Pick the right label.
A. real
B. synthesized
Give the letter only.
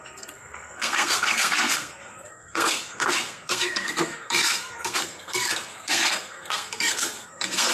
B